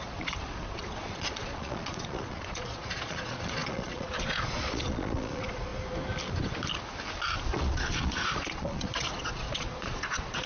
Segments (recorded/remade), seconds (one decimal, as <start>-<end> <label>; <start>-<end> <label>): 0.0-5.7 remade; 5.7-7.4 recorded; 7.4-10.5 remade